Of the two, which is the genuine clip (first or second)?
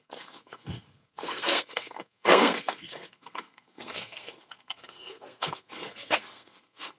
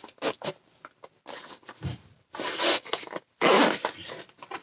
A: second